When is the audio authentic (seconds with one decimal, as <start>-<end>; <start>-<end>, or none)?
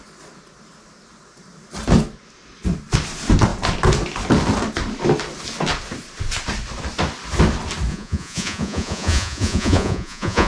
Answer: 0.0-7.9